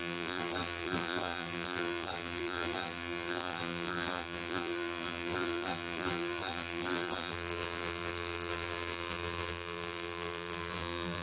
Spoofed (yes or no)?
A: yes